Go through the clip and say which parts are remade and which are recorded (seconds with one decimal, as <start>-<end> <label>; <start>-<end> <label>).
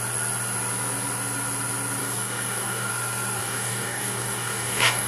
0.0-2.0 recorded; 2.0-2.9 remade; 2.9-3.4 recorded; 3.4-5.1 remade